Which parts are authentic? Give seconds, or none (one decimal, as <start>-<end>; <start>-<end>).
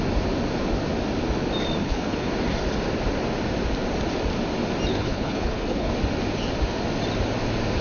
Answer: 0.0-1.8; 2.3-4.9; 5.9-7.8